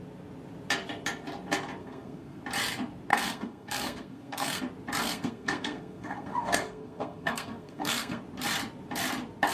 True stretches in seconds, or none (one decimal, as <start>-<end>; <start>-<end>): 0.0-1.8; 2.4-3.1; 4.6-5.0; 8.2-9.5